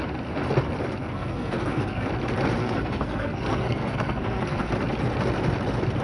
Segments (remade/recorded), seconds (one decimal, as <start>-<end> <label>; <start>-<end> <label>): 0.0-1.0 recorded; 1.0-2.1 remade; 2.1-2.6 recorded; 2.6-4.7 remade; 4.7-6.0 recorded